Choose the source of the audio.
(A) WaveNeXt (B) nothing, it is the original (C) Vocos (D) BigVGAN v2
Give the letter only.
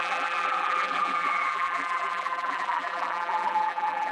D